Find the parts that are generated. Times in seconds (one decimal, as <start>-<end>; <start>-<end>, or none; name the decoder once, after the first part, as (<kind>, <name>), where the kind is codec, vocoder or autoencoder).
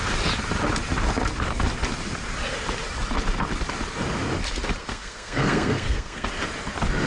4.8-6.3 (codec, SNAC)